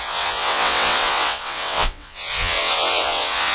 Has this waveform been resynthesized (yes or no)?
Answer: yes